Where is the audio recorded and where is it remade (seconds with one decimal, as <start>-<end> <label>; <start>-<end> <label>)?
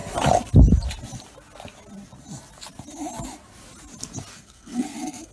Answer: 0.0-4.3 recorded; 4.3-5.3 remade